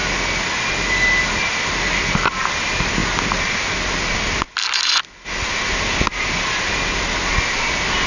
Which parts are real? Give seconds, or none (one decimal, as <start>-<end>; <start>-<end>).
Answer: 0.0-8.1